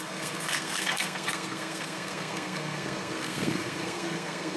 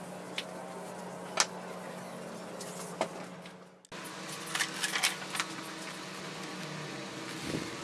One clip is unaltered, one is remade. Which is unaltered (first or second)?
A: second